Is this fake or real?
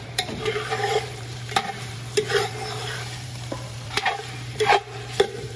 fake